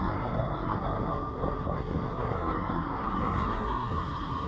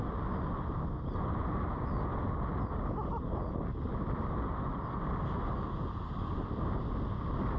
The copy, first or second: first